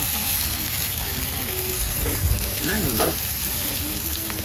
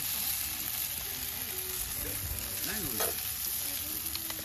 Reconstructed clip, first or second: first